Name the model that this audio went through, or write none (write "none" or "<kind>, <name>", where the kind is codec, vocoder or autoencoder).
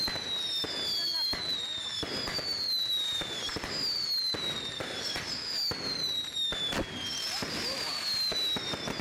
none